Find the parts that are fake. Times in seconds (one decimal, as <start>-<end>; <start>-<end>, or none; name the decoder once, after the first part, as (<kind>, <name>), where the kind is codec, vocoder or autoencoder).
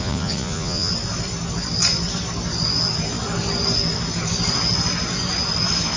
0.0-0.9 (vocoder, Vocos)